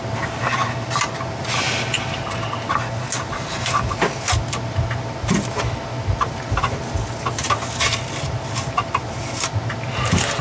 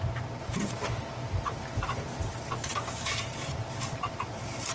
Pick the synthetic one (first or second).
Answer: second